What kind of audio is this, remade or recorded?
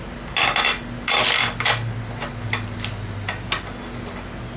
recorded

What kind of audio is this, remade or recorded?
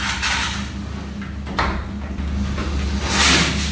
recorded